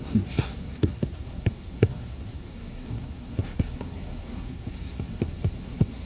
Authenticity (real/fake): fake